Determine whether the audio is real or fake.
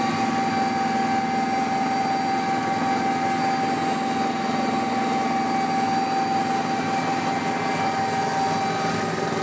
real